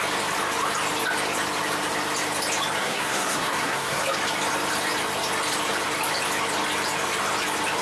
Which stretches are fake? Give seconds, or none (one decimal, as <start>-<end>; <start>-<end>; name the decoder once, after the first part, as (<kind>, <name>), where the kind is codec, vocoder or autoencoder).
2.8-4.0 (codec, SNAC)